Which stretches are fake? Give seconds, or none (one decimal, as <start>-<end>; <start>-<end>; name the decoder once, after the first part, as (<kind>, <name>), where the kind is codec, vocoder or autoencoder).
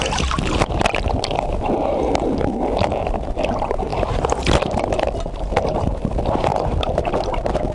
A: 6.5-7.1 (vocoder, BigVGAN v2)